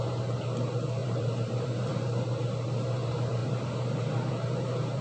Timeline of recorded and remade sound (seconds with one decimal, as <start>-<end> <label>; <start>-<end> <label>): 0.0-1.0 recorded; 1.0-1.9 remade; 1.9-3.4 recorded; 3.4-5.0 remade